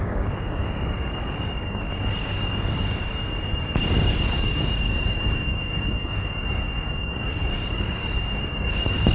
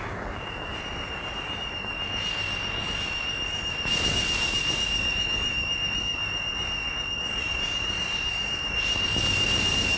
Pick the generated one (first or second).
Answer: first